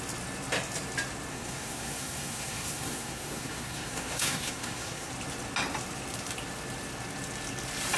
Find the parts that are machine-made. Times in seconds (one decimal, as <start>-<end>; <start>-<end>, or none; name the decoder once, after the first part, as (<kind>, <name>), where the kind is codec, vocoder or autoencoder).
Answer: 1.3-5.1 (codec, SNAC)